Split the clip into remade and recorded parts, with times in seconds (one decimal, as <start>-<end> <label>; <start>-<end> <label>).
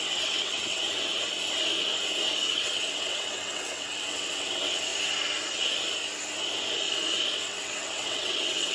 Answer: 0.0-1.1 remade; 1.1-2.4 recorded; 2.4-4.9 remade; 4.9-7.4 recorded; 7.4-8.7 remade